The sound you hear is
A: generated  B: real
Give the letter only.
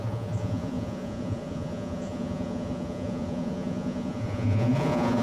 A